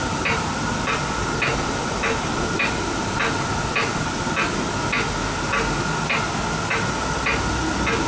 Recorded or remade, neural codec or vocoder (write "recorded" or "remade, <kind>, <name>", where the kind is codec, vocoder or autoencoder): recorded